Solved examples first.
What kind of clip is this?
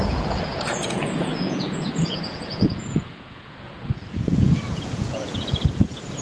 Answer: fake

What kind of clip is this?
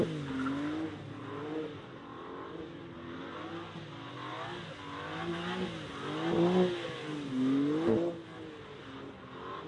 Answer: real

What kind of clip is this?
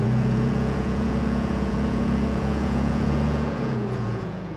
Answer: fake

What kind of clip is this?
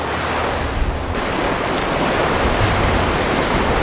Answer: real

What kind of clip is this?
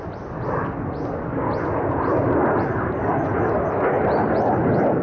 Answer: real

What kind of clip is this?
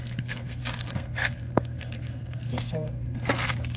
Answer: fake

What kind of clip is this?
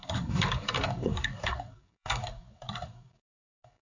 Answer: fake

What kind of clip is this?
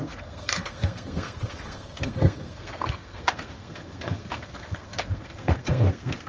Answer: fake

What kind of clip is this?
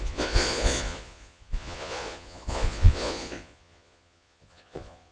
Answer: fake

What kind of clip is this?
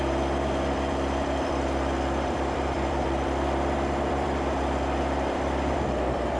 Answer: fake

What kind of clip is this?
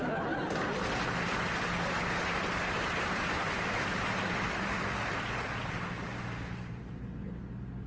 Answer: real